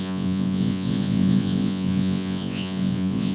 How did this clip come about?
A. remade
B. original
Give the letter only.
A